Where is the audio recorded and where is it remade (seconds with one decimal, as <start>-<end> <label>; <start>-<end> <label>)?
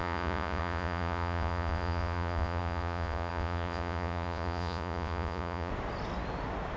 0.0-5.7 remade; 5.7-6.8 recorded